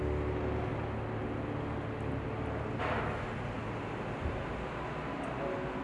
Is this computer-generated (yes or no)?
no